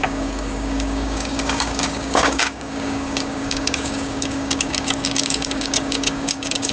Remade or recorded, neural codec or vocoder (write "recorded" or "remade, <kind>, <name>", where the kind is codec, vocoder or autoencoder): remade, codec, DAC